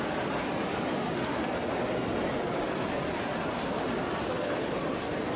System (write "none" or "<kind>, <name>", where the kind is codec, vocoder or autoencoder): none